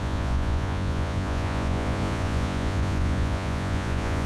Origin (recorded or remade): remade